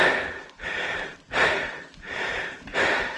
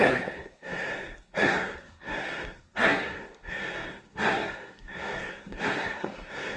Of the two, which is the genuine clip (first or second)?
first